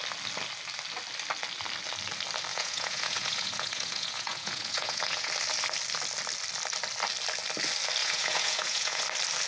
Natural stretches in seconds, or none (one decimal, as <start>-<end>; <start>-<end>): 0.0-2.5; 5.3-8.0; 9.0-9.5